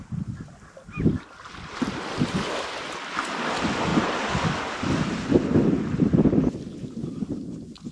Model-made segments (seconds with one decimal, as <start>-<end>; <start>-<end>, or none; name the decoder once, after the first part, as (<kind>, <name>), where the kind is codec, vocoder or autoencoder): none